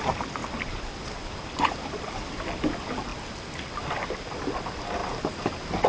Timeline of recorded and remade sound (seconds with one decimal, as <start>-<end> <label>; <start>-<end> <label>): 0.0-0.4 recorded; 0.4-1.8 remade; 1.8-5.0 recorded; 5.0-5.9 remade